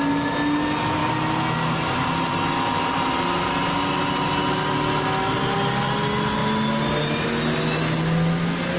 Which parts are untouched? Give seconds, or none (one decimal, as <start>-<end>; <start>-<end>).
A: 0.0-8.8